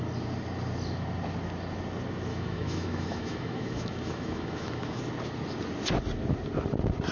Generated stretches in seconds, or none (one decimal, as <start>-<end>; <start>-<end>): 2.3-5.0